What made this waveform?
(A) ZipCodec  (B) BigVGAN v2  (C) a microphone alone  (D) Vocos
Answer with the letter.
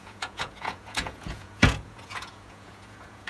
D